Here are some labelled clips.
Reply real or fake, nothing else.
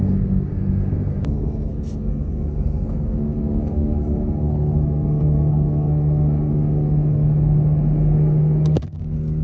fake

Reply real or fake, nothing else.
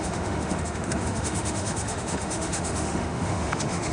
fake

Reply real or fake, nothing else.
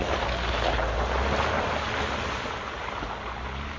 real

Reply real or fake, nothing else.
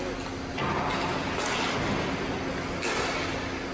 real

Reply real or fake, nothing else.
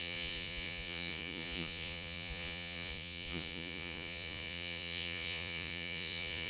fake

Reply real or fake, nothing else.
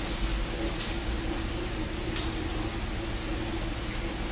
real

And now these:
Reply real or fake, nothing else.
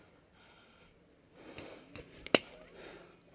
real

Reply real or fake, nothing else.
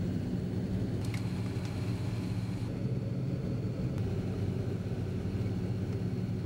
real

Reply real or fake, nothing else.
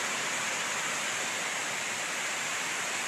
real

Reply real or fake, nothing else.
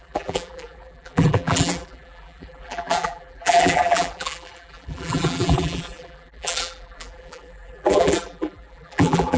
fake